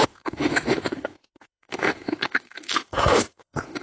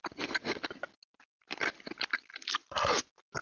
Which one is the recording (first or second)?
second